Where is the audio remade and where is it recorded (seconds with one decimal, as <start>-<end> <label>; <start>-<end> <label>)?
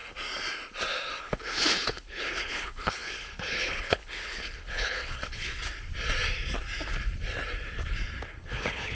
0.0-1.2 recorded; 1.2-5.6 remade; 5.6-8.5 recorded; 8.5-8.9 remade